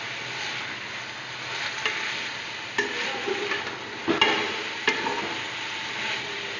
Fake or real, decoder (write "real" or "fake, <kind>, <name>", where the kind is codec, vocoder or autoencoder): real